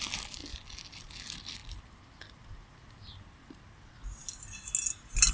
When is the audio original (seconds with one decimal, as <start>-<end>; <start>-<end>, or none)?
0.0-5.3